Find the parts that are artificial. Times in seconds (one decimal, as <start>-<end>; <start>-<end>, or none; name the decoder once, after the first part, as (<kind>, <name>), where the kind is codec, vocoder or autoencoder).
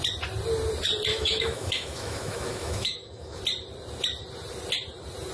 1.1-3.4 (autoencoder, DAC-VAE)